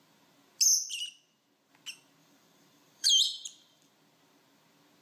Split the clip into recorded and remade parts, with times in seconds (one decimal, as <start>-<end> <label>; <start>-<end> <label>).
0.0-2.2 recorded; 2.2-3.9 remade; 3.9-5.0 recorded